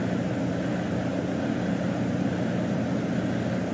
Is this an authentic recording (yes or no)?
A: yes